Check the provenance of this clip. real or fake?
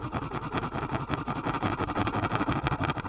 real